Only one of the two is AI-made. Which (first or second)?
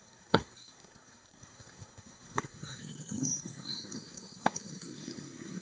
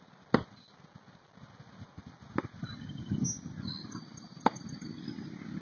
first